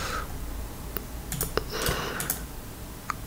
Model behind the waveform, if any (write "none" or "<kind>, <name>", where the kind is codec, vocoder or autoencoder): none